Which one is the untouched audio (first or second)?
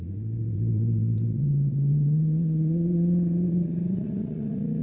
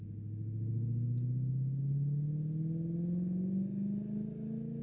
second